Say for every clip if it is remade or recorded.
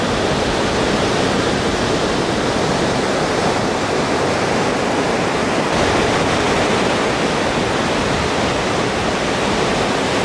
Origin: recorded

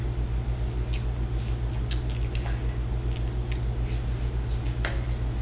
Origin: recorded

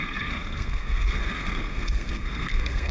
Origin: remade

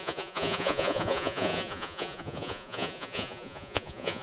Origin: remade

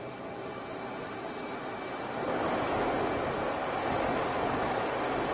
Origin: recorded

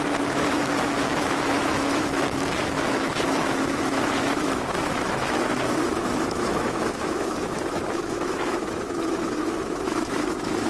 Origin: remade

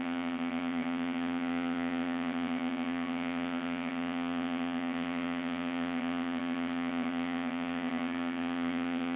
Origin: remade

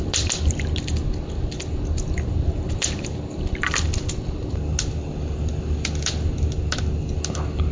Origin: recorded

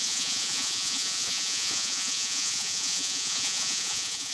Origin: remade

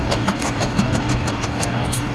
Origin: remade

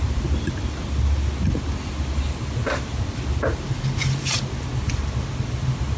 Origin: recorded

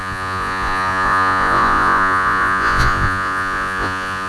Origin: remade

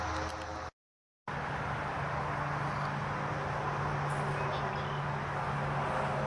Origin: recorded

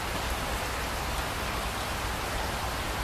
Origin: recorded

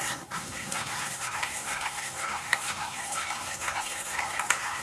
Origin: remade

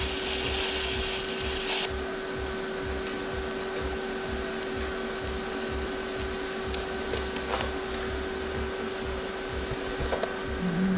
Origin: recorded